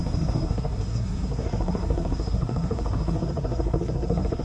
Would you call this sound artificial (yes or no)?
yes